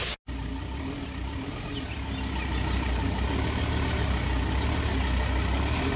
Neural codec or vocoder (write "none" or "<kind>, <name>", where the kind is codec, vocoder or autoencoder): none